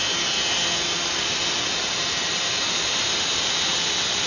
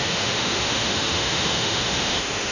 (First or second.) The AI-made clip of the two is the second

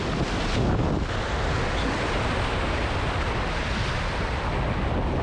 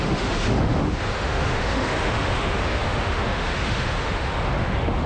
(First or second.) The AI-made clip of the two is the second